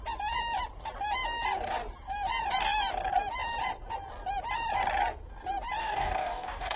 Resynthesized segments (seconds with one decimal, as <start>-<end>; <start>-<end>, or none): 5.8-6.8